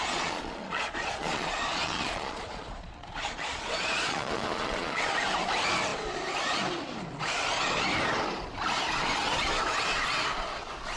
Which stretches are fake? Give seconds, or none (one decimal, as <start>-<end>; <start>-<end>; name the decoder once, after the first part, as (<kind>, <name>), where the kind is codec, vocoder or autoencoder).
0.0-5.1 (vocoder, Vocos)